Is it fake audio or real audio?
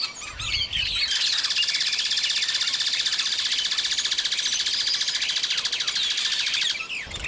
real